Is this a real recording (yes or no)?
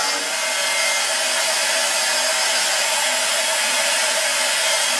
yes